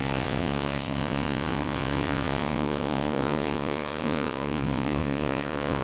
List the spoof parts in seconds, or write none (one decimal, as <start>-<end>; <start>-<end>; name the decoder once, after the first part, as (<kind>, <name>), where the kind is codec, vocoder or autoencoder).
0.0-5.8 (vocoder, WaveNeXt)